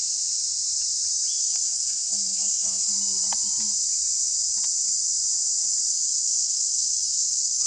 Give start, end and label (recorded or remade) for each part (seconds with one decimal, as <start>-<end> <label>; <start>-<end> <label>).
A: 0.0-1.4 recorded; 1.4-2.9 remade; 2.9-5.9 recorded; 5.9-7.7 remade